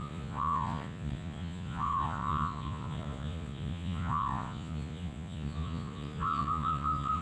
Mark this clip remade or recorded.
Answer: remade